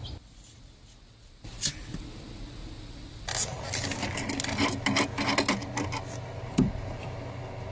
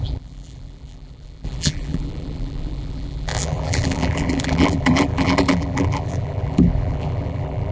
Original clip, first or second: first